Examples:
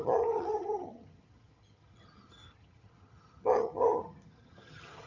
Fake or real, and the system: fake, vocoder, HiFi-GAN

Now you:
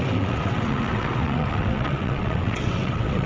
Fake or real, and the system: fake, vocoder, WaveNeXt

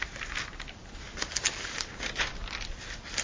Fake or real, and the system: real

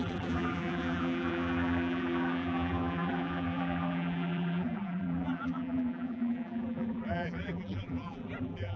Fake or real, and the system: fake, vocoder, BigVGAN v2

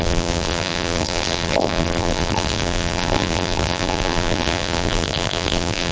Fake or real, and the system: fake, vocoder, BigVGAN v2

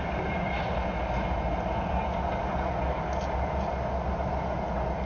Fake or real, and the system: real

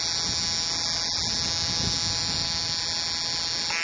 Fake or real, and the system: real